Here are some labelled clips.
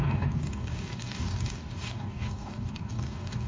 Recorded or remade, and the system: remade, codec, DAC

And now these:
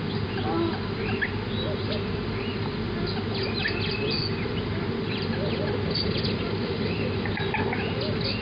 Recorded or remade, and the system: recorded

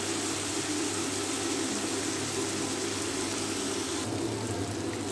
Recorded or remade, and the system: recorded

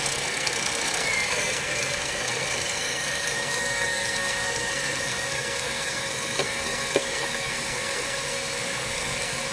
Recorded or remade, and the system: remade, codec, SNAC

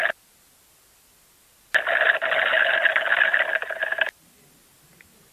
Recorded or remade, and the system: recorded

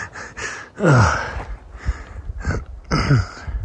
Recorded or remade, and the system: recorded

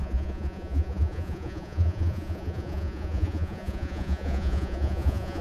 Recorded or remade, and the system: remade, vocoder, Vocos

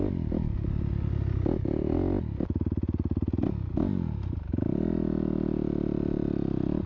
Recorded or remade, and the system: recorded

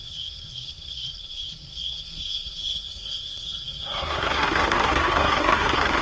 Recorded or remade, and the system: remade, codec, SNAC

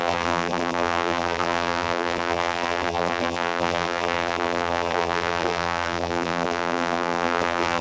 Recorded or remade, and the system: remade, vocoder, BigVGAN v2